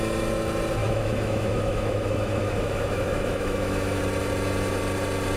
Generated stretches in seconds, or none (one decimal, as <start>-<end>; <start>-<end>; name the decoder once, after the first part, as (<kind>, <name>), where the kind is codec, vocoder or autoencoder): 0.8-4.0 (autoencoder, DAC-VAE)